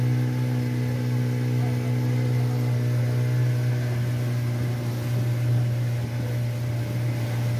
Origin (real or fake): real